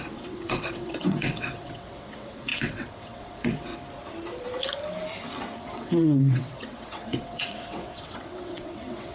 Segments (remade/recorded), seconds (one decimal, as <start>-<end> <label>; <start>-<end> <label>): 0.0-3.7 remade; 3.7-5.6 recorded; 5.6-9.1 remade

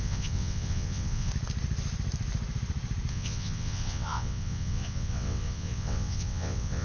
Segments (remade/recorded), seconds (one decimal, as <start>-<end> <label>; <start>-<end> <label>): 0.0-1.3 remade; 1.3-3.1 recorded; 3.1-6.8 remade

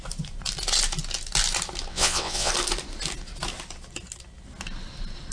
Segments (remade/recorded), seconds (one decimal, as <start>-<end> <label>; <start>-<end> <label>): 0.0-1.9 recorded; 1.9-2.5 remade; 2.5-5.3 recorded

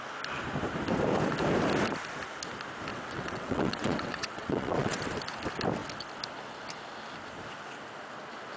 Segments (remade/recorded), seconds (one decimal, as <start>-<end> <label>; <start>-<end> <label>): 0.0-2.9 recorded; 2.9-5.0 remade; 5.0-8.6 recorded

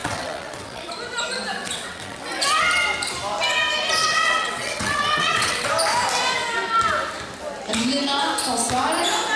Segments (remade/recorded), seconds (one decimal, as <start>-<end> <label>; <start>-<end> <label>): 0.0-0.9 remade; 0.9-1.5 recorded; 1.5-2.5 remade; 2.5-4.0 recorded; 4.0-5.7 remade; 5.7-9.4 recorded